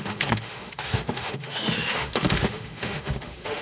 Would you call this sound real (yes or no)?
no